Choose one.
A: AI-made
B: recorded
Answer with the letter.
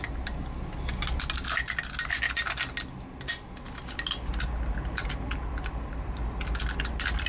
B